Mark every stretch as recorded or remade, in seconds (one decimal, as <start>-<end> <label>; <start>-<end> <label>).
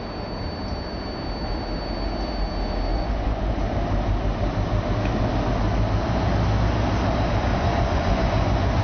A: 0.0-2.9 recorded; 2.9-3.5 remade; 3.5-7.5 recorded; 7.5-8.8 remade